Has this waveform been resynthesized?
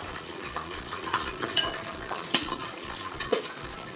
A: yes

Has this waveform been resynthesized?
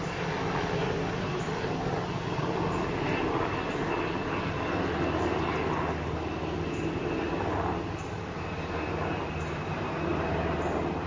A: no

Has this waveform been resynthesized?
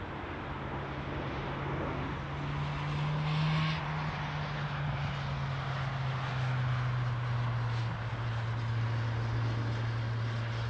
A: no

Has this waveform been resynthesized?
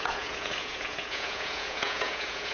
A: yes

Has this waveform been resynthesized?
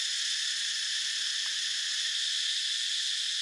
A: no